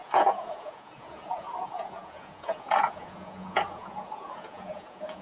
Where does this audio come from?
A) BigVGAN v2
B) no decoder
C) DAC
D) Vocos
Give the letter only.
D